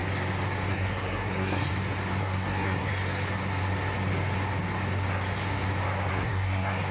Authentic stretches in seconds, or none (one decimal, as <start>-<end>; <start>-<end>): 0.0-0.7; 1.7-2.2; 2.9-6.1

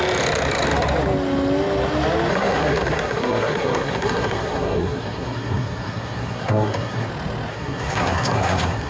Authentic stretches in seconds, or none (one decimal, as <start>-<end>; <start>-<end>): 0.0-2.3; 7.1-7.5

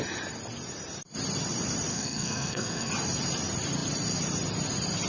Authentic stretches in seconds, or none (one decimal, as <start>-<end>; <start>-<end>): 0.0-1.9; 2.9-5.1

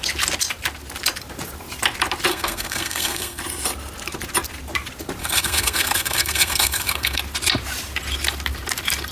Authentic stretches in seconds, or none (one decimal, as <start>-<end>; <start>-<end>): 0.0-2.3; 3.4-5.2; 7.2-9.1

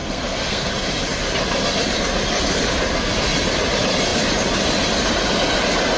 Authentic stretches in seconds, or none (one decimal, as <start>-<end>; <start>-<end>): 0.7-6.0

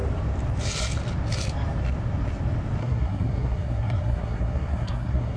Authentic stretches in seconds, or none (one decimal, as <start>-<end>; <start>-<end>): 0.0-2.8

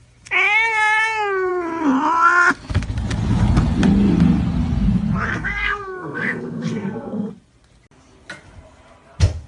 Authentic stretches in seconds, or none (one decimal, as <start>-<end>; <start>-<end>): 0.0-5.3; 7.3-9.5